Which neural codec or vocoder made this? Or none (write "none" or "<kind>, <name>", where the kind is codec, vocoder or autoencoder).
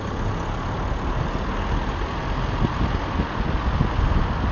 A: none